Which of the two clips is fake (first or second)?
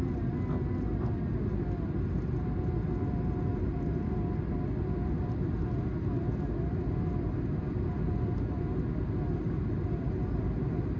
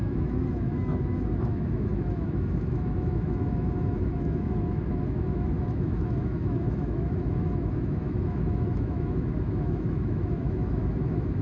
second